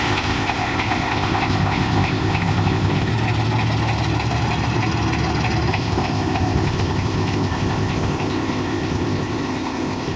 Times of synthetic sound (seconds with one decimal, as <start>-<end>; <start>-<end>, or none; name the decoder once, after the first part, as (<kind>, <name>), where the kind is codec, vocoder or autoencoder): 0.0-3.1 (codec, ZipCodec); 5.7-10.2